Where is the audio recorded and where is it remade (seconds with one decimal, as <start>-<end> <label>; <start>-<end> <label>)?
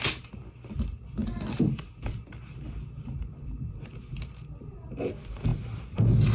0.0-6.3 recorded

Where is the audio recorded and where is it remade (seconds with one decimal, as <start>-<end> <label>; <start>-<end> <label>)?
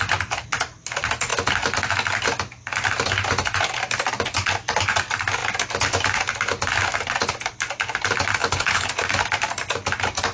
0.0-8.4 recorded; 8.4-8.9 remade; 8.9-10.3 recorded